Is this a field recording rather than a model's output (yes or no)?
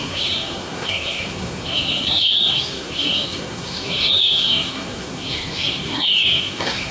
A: no